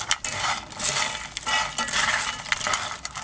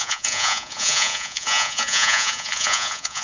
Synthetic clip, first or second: second